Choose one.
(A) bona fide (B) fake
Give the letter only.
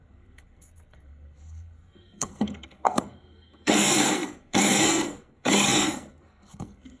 B